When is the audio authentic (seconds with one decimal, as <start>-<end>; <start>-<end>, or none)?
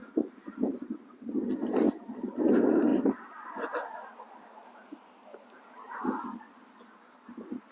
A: 0.0-7.7